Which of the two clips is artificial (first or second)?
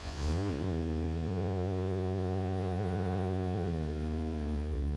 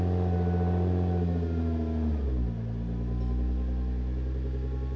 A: first